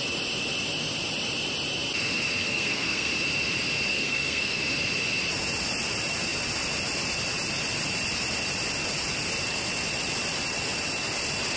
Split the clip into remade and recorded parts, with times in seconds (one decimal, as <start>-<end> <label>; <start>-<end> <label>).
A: 0.0-2.4 recorded; 2.4-3.1 remade; 3.1-3.9 recorded; 3.9-4.6 remade; 4.6-11.6 recorded